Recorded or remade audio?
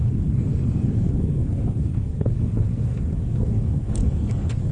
remade